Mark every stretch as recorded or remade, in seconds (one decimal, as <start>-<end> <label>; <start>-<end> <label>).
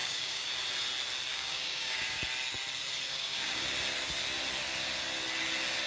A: 0.0-0.5 remade; 0.5-1.3 recorded; 1.3-2.2 remade; 2.2-3.1 recorded; 3.1-3.6 remade; 3.6-5.9 recorded